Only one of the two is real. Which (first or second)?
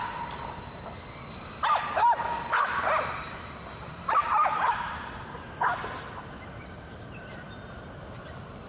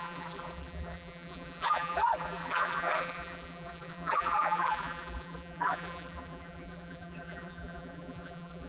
first